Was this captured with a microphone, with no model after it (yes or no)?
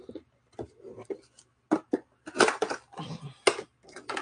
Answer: yes